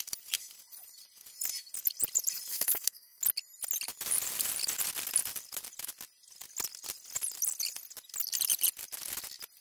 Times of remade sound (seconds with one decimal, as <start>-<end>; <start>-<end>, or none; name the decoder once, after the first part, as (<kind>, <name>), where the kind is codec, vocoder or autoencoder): 2.5-3.2 (codec, SNAC)